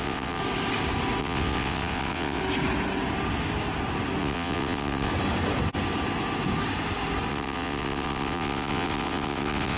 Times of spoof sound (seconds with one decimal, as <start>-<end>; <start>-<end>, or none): 0.0-0.4; 1.2-2.4; 4.2-5.1; 7.3-9.8